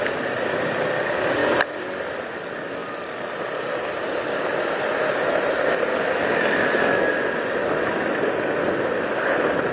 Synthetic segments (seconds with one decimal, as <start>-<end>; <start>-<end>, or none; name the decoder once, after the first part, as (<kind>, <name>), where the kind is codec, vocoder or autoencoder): 5.9-7.1 (autoencoder, DAC-VAE)